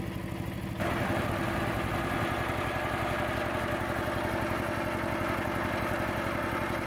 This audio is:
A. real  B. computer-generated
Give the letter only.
A